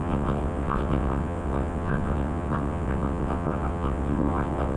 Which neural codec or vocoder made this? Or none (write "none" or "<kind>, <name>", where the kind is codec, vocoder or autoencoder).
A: vocoder, WaveNeXt